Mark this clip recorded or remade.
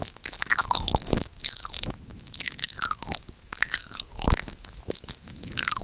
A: remade